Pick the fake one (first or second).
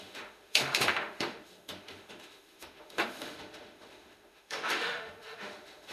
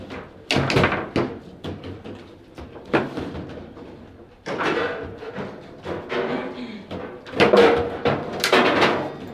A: first